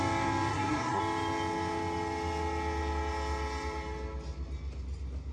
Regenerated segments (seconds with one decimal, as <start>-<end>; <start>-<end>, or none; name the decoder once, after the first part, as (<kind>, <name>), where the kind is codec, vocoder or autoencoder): 0.5-1.0 (codec, SNAC)